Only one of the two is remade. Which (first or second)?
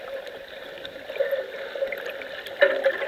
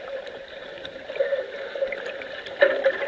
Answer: second